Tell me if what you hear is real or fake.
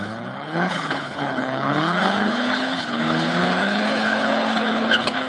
fake